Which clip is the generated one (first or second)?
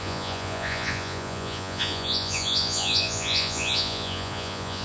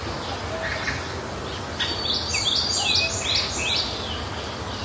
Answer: first